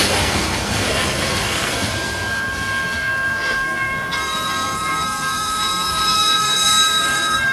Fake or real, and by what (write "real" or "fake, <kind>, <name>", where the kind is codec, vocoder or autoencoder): fake, codec, SNAC